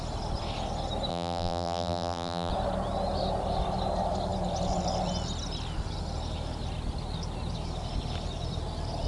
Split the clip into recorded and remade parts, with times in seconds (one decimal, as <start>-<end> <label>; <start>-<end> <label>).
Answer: 0.0-1.1 recorded; 1.1-2.5 remade; 2.5-9.1 recorded